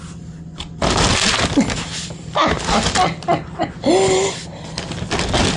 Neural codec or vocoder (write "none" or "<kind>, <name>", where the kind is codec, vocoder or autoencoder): none